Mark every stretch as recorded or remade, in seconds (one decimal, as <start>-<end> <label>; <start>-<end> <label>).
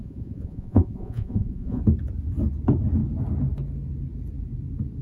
0.0-1.8 remade; 1.8-5.0 recorded